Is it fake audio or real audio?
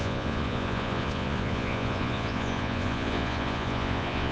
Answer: fake